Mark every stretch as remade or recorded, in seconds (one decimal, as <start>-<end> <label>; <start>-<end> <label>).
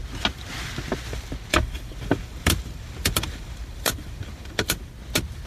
0.0-1.5 recorded; 1.5-4.8 remade; 4.8-5.5 recorded